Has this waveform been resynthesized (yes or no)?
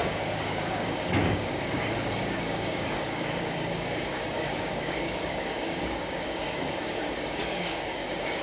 yes